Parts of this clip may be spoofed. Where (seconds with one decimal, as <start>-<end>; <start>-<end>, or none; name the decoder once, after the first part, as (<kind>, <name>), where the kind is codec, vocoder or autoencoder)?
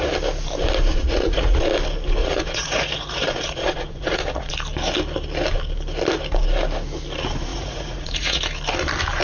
1.0-1.6 (vocoder, Vocos); 2.2-4.5; 7.5-8.4